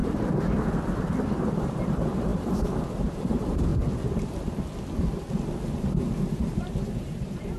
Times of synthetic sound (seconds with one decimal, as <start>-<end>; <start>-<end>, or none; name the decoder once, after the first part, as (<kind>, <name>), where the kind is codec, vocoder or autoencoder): 1.4-3.7 (vocoder, BigVGAN v2); 5.9-7.6